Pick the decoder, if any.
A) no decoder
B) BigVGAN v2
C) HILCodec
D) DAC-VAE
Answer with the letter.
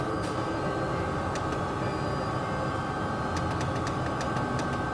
A